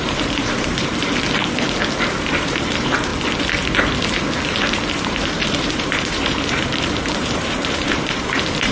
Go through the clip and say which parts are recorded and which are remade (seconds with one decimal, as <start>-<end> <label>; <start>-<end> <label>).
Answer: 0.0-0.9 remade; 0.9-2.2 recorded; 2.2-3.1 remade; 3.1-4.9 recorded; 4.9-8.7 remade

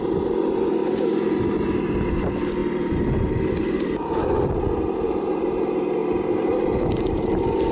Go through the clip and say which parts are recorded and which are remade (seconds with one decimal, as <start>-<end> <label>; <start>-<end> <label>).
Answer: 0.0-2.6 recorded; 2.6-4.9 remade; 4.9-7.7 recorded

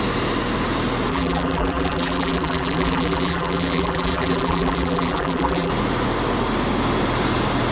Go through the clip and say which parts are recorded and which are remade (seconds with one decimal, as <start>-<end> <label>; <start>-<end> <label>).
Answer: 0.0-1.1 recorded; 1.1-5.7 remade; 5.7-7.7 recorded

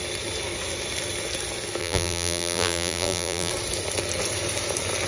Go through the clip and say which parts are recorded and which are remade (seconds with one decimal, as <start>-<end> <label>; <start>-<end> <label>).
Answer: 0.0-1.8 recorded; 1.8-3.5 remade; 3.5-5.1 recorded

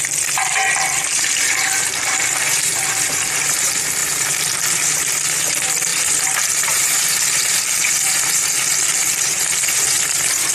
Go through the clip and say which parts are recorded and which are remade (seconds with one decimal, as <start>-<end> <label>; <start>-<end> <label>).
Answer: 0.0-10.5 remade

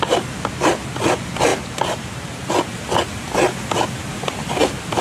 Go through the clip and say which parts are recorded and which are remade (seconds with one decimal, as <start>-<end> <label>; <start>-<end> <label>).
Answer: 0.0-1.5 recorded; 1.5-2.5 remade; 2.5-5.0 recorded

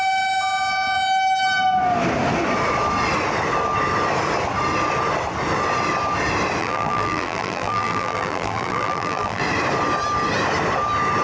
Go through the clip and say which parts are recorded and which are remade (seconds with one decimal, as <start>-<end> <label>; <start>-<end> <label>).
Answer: 0.0-6.6 recorded; 6.6-9.4 remade; 9.4-11.2 recorded

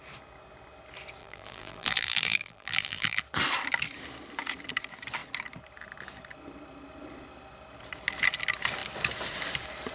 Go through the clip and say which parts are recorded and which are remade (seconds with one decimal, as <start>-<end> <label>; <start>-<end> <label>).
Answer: 0.0-1.2 recorded; 1.2-3.2 remade; 3.2-9.9 recorded